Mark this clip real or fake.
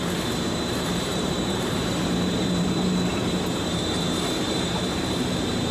fake